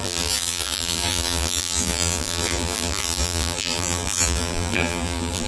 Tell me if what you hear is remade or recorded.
remade